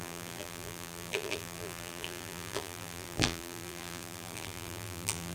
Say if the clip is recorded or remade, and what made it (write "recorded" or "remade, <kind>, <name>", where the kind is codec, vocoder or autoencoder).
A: remade, vocoder, BigVGAN v2